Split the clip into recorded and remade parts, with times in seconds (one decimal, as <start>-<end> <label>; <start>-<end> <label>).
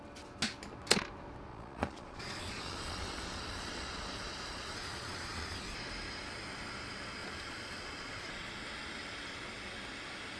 0.0-1.5 recorded; 1.5-5.8 remade; 5.8-7.2 recorded; 7.2-8.6 remade; 8.6-10.4 recorded